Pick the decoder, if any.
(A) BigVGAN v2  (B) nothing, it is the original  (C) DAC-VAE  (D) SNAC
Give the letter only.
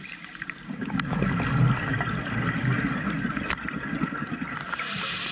B